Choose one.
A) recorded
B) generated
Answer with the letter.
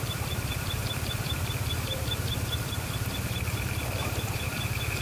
B